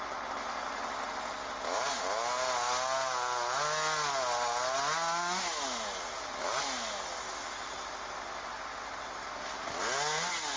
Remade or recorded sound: recorded